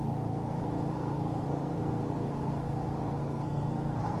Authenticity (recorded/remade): remade